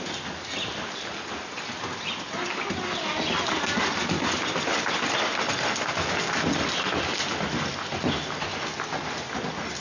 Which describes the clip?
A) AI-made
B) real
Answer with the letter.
B